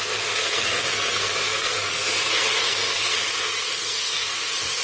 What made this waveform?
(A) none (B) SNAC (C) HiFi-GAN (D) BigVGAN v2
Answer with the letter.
B